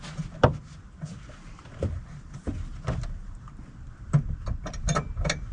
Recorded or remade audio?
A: recorded